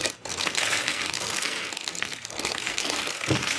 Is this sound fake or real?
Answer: fake